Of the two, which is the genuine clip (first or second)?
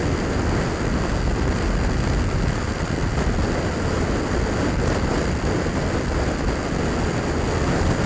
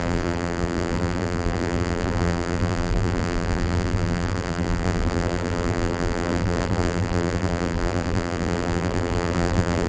first